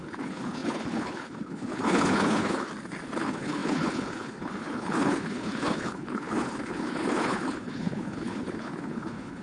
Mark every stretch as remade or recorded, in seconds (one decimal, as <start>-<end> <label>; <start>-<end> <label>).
0.0-2.7 remade; 2.7-3.2 recorded; 3.2-9.4 remade